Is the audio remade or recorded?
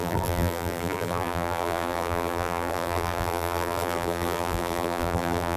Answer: remade